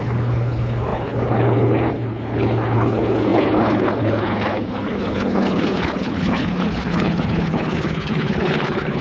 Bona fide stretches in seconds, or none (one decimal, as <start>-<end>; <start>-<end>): none